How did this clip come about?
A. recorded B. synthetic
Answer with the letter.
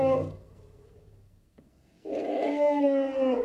B